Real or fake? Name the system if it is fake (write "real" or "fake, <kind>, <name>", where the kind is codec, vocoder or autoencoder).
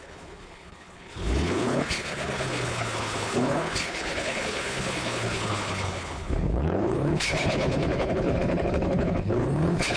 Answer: fake, codec, HILCodec